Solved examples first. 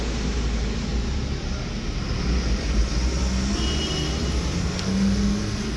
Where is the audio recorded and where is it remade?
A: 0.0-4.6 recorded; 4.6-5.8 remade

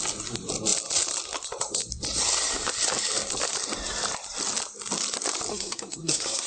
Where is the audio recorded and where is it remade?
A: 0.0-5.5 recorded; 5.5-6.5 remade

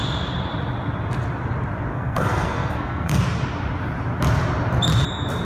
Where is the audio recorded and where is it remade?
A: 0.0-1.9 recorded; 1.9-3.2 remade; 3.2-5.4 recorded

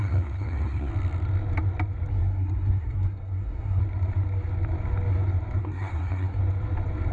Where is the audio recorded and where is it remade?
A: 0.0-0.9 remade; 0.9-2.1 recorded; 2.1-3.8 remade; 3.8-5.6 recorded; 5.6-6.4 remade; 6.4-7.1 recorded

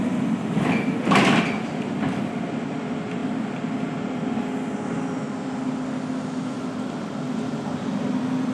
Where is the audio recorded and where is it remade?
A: 0.0-8.5 recorded